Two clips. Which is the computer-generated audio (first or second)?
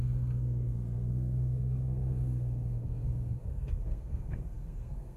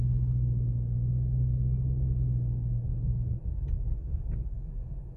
first